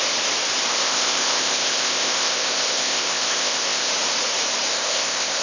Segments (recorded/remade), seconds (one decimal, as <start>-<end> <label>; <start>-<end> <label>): 0.0-0.7 recorded; 0.7-3.9 remade; 3.9-4.7 recorded; 4.7-5.4 remade